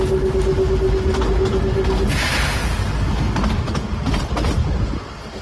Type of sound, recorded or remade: recorded